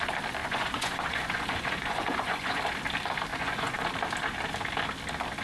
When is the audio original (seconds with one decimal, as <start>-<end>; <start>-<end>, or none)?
0.0-0.4; 2.6-3.3; 3.9-5.4